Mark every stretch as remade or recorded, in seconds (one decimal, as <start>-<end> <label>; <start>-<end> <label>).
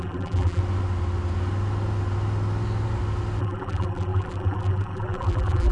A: 0.0-0.6 remade; 0.6-3.4 recorded; 3.4-5.7 remade